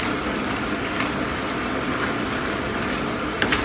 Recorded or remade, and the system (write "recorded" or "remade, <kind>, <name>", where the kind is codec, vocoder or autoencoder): recorded